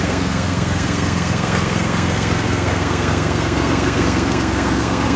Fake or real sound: fake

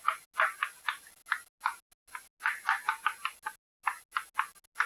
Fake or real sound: real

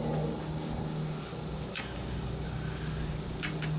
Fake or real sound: real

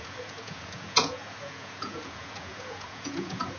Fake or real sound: fake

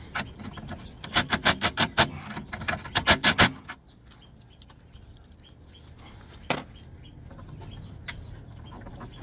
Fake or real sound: real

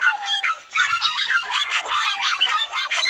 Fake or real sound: fake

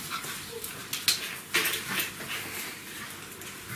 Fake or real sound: real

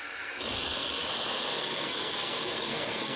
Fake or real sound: fake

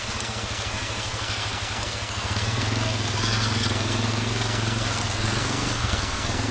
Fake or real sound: fake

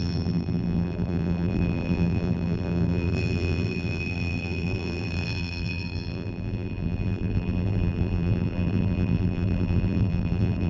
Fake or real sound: fake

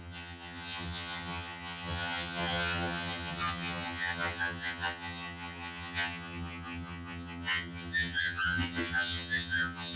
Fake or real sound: fake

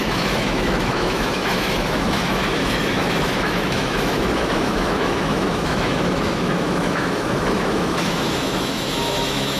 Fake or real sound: fake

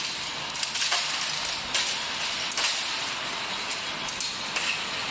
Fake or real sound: real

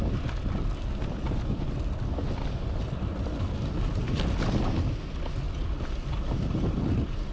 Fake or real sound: real